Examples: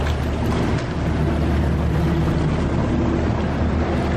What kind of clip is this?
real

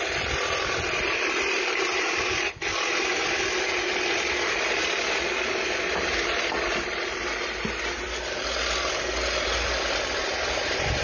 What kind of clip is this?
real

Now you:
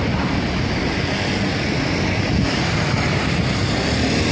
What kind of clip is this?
real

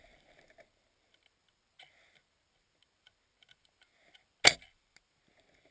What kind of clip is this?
real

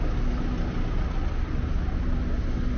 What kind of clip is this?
real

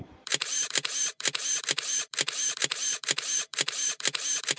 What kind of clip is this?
fake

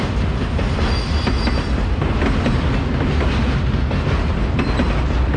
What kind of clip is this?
real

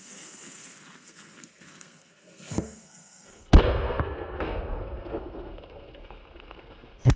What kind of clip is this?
fake